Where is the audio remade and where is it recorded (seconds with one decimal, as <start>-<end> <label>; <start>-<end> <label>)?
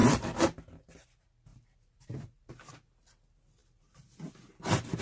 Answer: 0.0-1.5 recorded; 1.5-2.5 remade; 2.5-3.6 recorded; 3.6-4.3 remade; 4.3-5.0 recorded